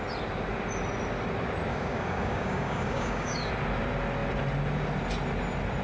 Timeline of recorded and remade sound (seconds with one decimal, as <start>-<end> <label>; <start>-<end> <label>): 0.0-1.7 recorded; 1.7-3.5 remade; 3.5-5.8 recorded